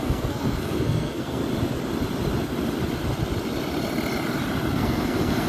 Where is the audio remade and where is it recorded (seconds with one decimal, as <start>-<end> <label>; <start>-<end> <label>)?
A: 0.0-1.4 remade; 1.4-4.7 recorded; 4.7-5.5 remade